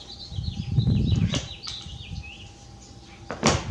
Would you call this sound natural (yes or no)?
no